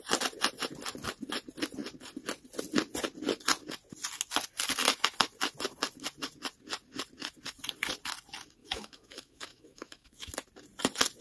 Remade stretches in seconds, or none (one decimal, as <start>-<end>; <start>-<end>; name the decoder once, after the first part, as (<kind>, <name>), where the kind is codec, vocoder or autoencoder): 8.6-10.3 (autoencoder, DAC-VAE)